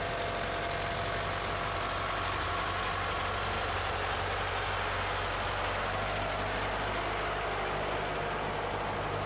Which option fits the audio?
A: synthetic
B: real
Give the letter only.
B